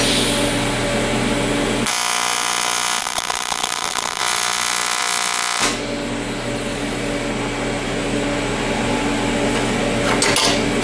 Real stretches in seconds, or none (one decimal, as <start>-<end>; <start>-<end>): 0.0-3.0; 4.2-10.8